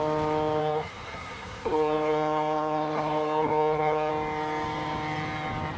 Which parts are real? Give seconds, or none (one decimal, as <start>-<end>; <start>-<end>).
0.0-0.6; 4.1-5.8